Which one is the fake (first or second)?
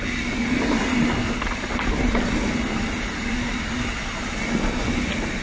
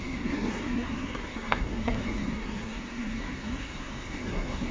second